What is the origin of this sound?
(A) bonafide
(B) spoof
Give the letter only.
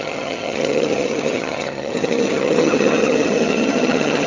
B